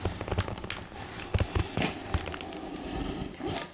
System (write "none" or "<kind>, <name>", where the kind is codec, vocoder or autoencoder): none